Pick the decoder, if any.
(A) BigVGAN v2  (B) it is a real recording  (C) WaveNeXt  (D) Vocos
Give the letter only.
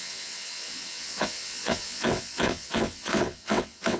C